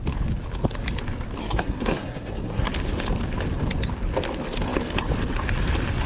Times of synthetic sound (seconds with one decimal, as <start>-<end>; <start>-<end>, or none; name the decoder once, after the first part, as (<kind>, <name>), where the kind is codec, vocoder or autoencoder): 1.4-2.7 (codec, SNAC)